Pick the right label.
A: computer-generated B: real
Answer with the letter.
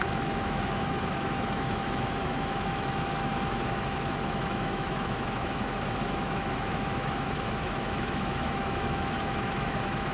A